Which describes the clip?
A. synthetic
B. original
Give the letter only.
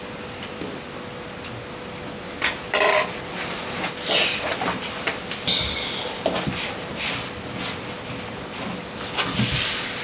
B